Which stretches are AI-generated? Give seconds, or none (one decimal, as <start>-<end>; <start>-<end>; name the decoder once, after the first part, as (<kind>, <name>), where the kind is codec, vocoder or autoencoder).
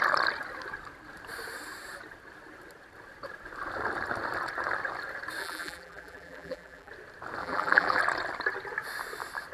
5.4-6.9 (vocoder, BigVGAN v2); 7.4-8.0